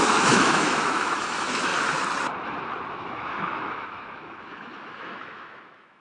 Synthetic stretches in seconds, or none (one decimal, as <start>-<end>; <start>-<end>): 0.0-1.7; 2.9-6.0